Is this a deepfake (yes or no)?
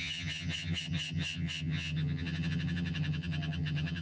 yes